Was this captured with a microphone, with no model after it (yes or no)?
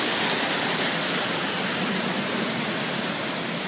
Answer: yes